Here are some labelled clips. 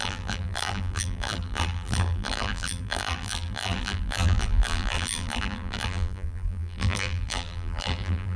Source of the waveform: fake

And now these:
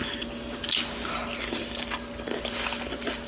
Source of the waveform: real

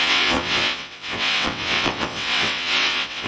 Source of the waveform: fake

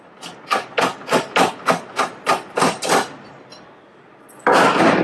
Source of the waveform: real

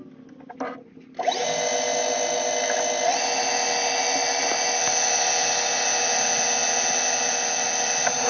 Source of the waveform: real